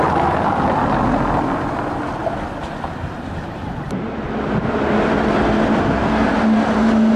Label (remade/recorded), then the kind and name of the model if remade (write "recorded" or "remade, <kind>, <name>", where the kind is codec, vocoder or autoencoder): recorded